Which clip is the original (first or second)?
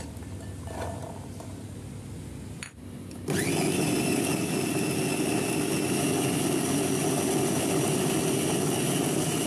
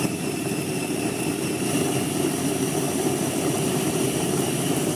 first